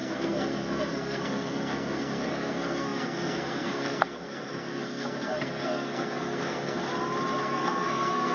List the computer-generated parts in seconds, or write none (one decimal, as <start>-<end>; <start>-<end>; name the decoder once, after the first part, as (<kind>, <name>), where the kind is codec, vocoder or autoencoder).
0.0-6.8 (codec, SNAC); 7.4-8.3